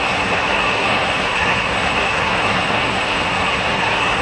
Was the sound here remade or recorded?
remade